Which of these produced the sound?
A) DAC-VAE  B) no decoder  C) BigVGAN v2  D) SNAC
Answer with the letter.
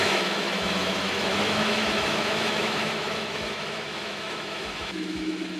A